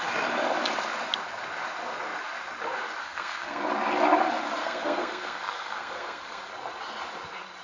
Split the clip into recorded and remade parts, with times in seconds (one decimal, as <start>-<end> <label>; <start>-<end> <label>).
0.0-3.0 recorded; 3.0-3.6 remade; 3.6-4.6 recorded; 4.6-6.5 remade; 6.5-7.6 recorded